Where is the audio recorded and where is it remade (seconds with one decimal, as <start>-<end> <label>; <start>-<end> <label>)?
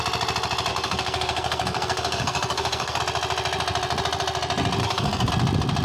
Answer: 0.0-0.7 recorded; 0.7-3.0 remade; 3.0-4.8 recorded; 4.8-5.3 remade; 5.3-5.8 recorded